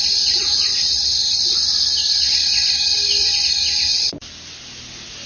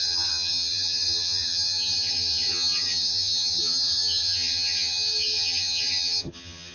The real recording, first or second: first